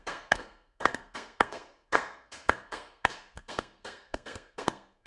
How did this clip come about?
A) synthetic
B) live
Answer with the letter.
A